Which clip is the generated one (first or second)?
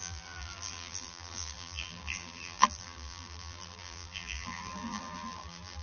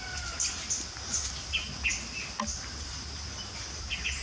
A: first